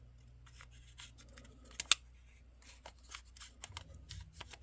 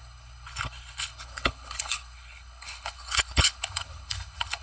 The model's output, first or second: second